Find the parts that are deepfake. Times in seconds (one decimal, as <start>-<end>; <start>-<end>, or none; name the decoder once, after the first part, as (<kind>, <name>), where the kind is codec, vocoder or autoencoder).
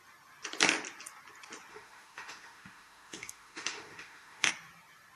1.7-4.5 (autoencoder, DAC-VAE)